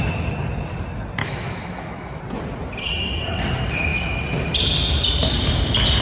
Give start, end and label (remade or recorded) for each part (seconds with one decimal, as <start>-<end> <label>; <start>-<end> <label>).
0.0-1.2 recorded; 1.2-2.2 remade; 2.2-6.0 recorded